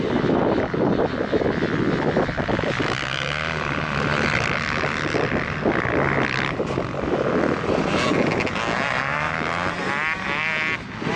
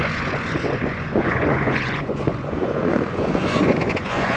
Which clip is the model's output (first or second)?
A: second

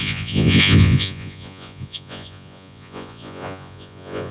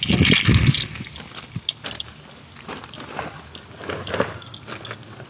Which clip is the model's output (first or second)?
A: first